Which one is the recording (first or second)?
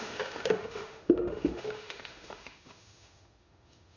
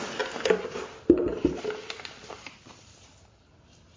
second